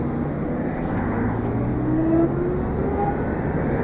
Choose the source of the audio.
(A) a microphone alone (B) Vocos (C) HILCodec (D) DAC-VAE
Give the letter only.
A